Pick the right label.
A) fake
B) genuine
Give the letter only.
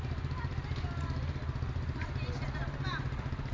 B